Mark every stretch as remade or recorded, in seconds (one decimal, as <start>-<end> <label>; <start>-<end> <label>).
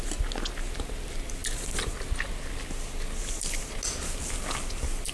0.0-5.1 recorded